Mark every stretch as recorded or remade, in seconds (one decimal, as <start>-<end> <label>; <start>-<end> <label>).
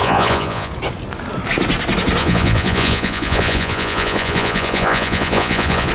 0.0-0.7 remade; 0.7-2.2 recorded; 2.2-5.9 remade